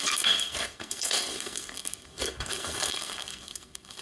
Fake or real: fake